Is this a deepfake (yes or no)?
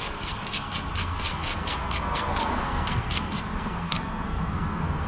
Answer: yes